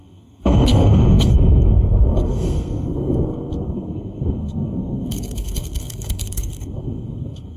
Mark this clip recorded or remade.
remade